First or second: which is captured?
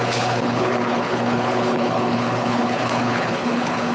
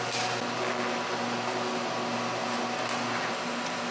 second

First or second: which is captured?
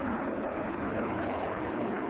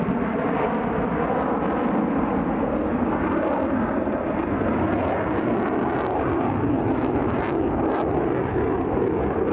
second